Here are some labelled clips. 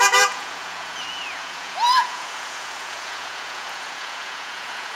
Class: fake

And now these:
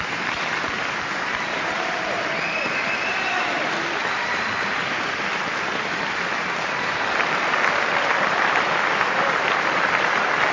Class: fake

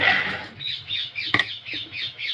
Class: fake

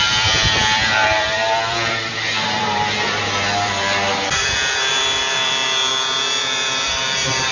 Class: fake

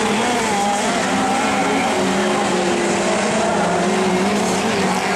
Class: real